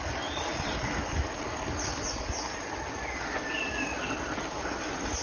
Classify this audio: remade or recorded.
recorded